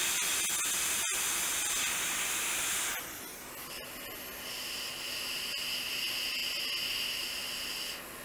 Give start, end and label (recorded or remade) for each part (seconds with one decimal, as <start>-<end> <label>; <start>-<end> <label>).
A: 0.0-8.2 recorded